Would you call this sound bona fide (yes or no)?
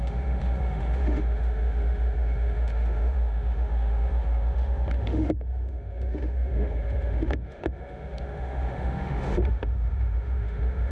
no